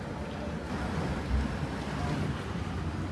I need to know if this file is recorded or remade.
recorded